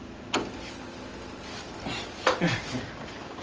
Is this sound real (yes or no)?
yes